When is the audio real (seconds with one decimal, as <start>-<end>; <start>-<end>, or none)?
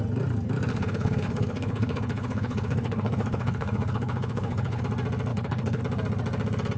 0.0-0.7; 4.8-5.3; 5.8-6.8